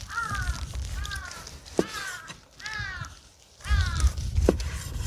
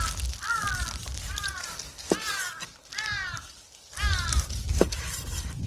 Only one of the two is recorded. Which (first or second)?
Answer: second